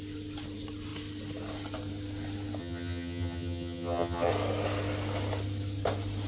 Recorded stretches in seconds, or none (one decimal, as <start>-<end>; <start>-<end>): 0.0-2.6; 4.3-6.3